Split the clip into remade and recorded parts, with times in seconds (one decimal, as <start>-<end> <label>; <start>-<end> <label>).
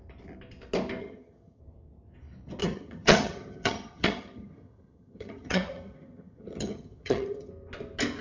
0.0-1.0 recorded; 1.0-1.6 remade; 1.6-2.6 recorded; 2.6-7.5 remade; 7.5-8.2 recorded